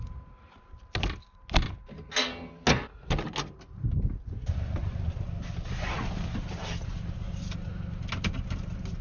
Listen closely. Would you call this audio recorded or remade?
recorded